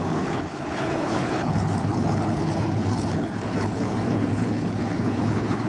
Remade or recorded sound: remade